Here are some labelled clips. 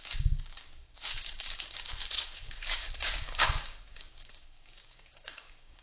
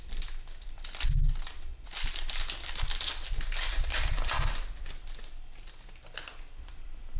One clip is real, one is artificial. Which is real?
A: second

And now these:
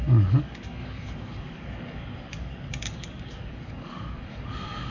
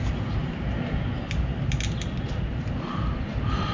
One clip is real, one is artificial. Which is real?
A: second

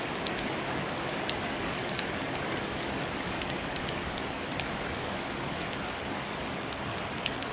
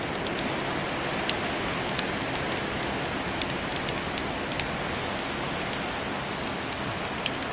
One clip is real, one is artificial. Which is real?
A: second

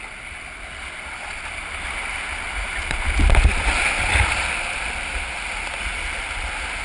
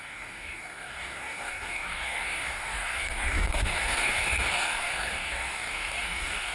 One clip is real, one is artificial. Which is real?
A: first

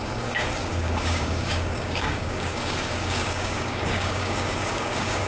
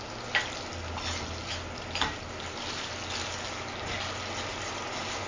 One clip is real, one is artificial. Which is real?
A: second